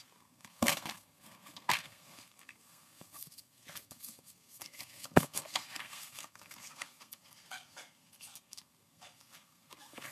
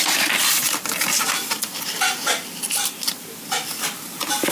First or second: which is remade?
first